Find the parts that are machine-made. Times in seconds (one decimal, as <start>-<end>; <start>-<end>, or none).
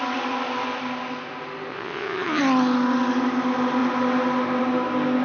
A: 1.7-2.4